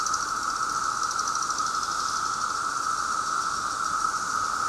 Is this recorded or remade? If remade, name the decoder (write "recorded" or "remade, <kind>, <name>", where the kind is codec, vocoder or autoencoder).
recorded